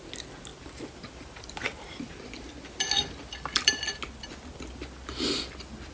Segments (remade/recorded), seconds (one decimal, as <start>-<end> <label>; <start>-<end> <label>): 0.0-0.5 recorded; 0.5-4.0 remade; 4.0-5.9 recorded